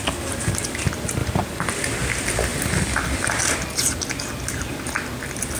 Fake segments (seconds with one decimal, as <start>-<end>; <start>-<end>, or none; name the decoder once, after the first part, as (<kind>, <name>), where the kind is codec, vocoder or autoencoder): 1.2-1.7 (vocoder, BigVGAN v2); 2.5-3.4